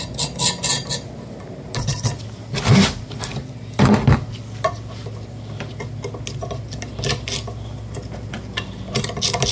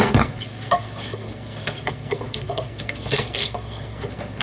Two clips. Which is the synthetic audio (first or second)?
second